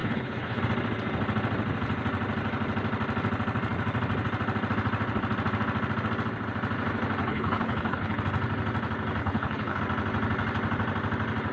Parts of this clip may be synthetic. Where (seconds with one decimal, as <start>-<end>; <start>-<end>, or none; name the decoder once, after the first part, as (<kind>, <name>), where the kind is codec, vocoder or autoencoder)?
0.0-0.6 (codec, HILCodec); 7.2-8.2; 9.2-9.8